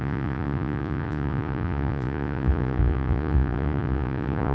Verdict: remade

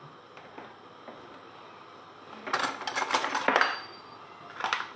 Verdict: recorded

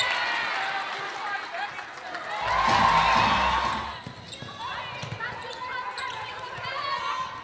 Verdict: recorded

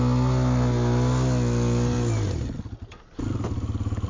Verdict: recorded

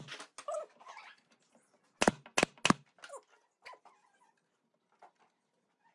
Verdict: recorded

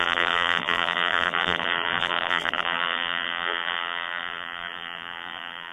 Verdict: remade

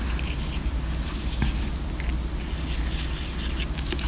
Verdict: recorded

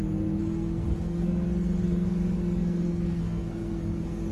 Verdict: remade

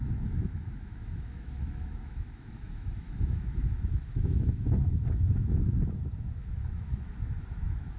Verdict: remade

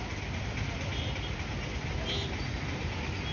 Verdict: recorded